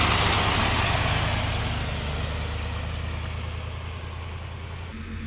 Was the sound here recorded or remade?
recorded